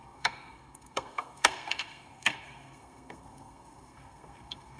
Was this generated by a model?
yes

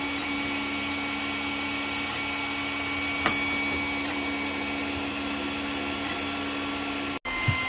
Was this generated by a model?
no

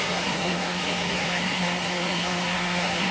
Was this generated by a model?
yes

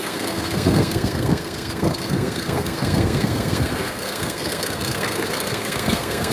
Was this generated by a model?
yes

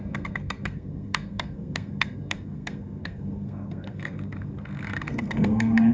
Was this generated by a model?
yes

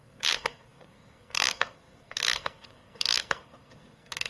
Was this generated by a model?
yes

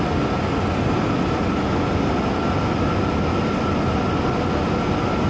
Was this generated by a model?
no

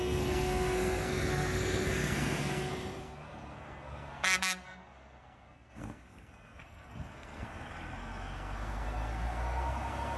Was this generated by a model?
yes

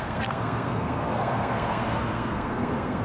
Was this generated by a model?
yes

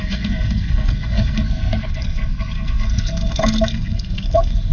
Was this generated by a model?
yes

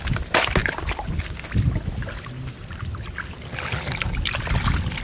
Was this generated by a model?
no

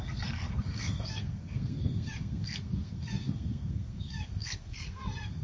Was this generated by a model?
yes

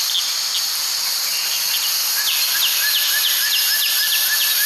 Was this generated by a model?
no